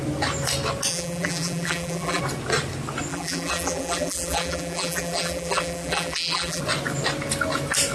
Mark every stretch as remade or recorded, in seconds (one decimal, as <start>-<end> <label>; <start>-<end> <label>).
0.0-0.9 recorded; 0.9-2.2 remade; 2.2-3.1 recorded; 3.1-6.6 remade; 6.6-7.9 recorded